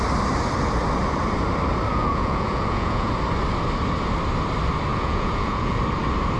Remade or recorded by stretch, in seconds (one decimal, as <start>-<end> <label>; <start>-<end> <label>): 0.0-1.9 recorded; 1.9-3.1 remade; 3.1-4.9 recorded; 4.9-5.8 remade; 5.8-6.4 recorded